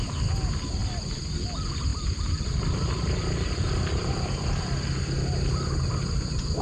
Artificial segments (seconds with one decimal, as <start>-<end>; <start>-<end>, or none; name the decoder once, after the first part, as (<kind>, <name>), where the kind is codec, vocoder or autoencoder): 0.8-1.5 (vocoder, BigVGAN v2); 1.9-5.5